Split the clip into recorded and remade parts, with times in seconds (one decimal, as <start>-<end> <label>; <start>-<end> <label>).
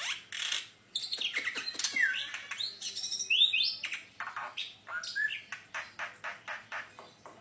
0.0-7.4 recorded